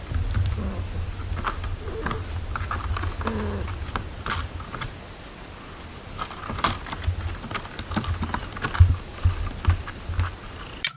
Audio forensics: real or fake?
real